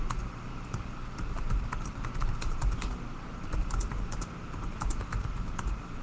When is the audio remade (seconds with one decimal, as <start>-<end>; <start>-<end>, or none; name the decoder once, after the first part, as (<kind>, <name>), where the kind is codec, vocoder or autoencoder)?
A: none